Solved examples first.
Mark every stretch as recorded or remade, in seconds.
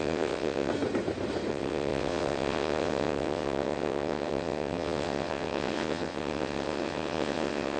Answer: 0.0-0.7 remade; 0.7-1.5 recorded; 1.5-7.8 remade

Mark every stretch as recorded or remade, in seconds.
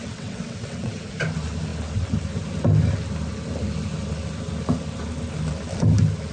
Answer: 0.0-0.9 remade; 0.9-6.3 recorded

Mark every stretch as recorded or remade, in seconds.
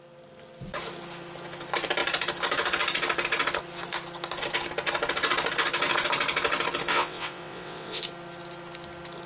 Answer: 0.0-6.9 recorded; 6.9-8.0 remade; 8.0-9.3 recorded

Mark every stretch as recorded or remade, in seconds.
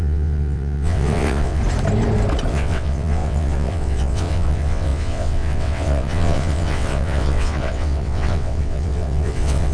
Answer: 0.0-1.6 remade; 1.6-2.5 recorded; 2.5-9.7 remade